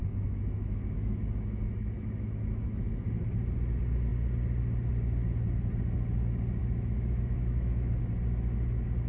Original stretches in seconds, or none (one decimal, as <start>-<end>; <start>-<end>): 3.1-6.6; 8.0-9.1